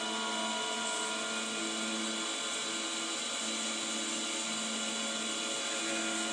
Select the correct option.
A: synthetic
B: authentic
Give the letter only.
B